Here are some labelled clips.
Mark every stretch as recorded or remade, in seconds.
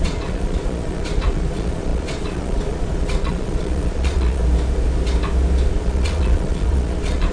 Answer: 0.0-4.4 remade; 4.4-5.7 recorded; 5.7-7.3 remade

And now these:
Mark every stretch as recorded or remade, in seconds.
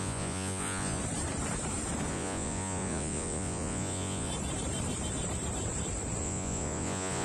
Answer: 0.0-1.0 remade; 1.0-2.1 recorded; 2.1-4.3 remade; 4.3-6.2 recorded; 6.2-7.2 remade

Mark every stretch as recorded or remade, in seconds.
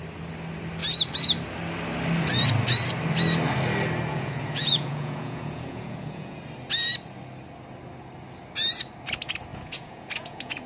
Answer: 0.0-4.1 recorded; 4.1-6.4 remade; 6.4-9.5 recorded; 9.5-10.7 remade